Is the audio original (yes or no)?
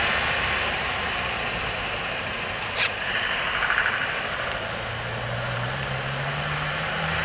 no